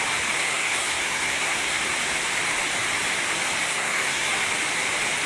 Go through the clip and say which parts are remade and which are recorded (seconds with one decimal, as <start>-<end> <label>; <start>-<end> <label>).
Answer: 0.0-0.4 recorded; 0.4-1.8 remade; 1.8-3.7 recorded; 3.7-4.3 remade; 4.3-5.3 recorded